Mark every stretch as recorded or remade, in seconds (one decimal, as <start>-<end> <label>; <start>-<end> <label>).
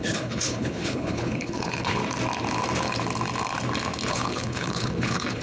0.0-2.0 remade; 2.0-4.1 recorded; 4.1-5.4 remade